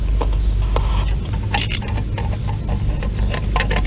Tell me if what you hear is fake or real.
real